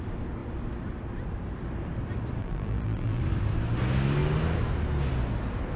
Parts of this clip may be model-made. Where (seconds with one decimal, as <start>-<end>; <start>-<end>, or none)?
2.4-3.2